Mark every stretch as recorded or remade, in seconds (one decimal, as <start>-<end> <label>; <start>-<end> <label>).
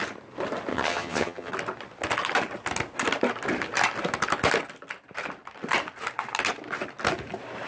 0.0-0.7 recorded; 0.7-1.5 remade; 1.5-7.7 recorded